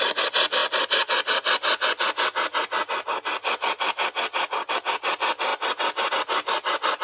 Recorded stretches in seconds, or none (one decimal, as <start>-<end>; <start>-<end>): 0.0-7.0